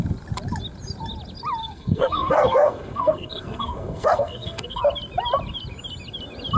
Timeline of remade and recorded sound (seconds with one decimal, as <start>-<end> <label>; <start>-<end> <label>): 0.0-1.6 recorded; 1.6-4.8 remade; 4.8-6.6 recorded